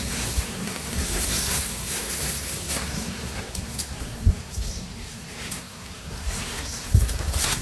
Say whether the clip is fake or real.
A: fake